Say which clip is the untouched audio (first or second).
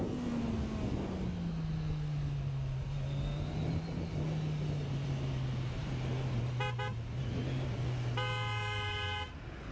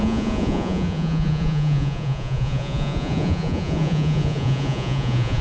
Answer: first